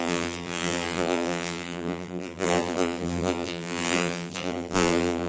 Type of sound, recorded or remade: remade